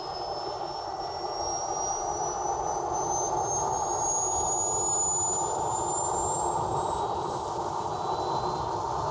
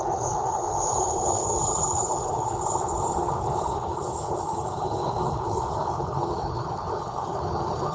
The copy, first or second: second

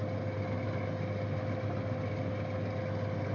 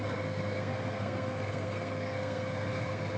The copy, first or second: second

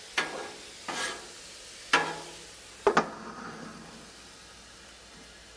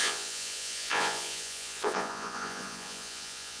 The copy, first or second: second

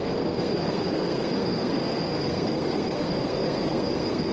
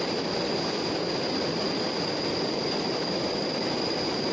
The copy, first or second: first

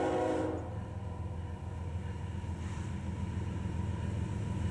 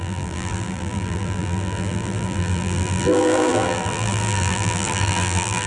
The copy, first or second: second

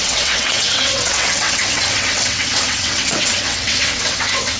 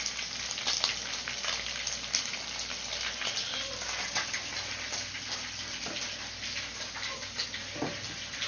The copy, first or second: first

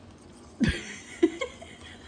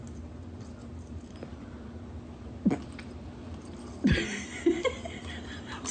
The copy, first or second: first